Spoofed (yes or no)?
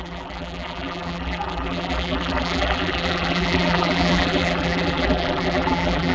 yes